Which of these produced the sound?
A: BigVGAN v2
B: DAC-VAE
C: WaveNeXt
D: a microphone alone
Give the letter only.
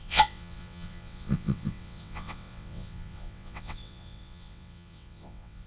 C